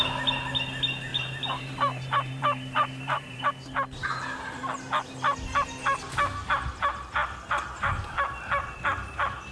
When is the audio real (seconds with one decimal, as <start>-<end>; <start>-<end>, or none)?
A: 0.0-1.1; 3.5-4.0; 4.6-9.5